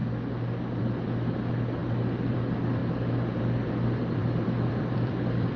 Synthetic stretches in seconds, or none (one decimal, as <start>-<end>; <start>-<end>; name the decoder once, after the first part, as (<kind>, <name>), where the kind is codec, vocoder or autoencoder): 0.8-1.8 (vocoder, BigVGAN v2); 2.3-2.8; 3.4-5.6

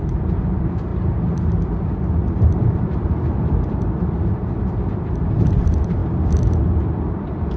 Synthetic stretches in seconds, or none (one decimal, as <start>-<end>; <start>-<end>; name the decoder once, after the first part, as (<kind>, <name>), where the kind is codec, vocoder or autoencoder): 0.0-0.9 (vocoder, BigVGAN v2); 1.6-6.0; 6.7-7.6

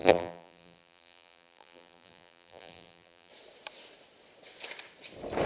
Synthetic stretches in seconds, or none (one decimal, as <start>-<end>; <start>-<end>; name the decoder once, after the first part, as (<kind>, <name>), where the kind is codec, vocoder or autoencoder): 0.0-3.3 (vocoder, BigVGAN v2)